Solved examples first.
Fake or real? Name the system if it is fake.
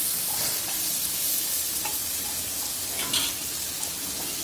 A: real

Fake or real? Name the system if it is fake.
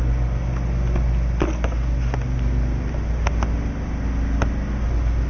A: real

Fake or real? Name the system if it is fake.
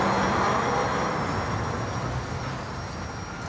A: real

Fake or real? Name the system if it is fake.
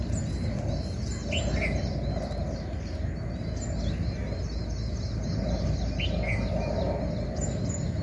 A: real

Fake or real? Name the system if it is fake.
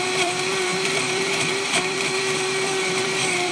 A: fake, vocoder, BigVGAN v2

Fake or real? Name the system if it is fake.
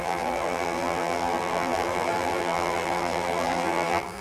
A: fake, vocoder, BigVGAN v2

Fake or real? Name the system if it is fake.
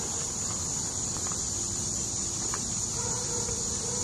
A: fake, vocoder, BigVGAN v2